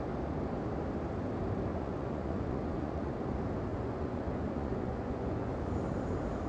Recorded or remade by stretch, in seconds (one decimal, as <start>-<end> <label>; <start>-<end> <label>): 0.0-1.7 recorded; 1.7-3.1 remade; 3.1-3.7 recorded; 3.7-5.5 remade; 5.5-6.5 recorded